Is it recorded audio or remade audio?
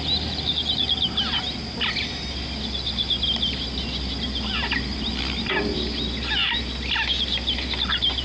recorded